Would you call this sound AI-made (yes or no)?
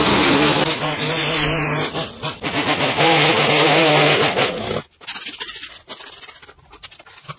no